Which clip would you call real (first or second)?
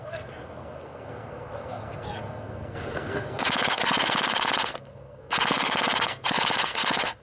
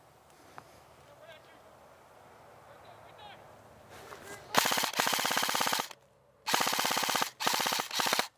second